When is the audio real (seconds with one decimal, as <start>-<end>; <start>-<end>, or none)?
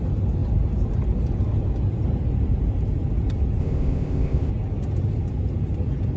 0.0-3.6; 4.5-6.2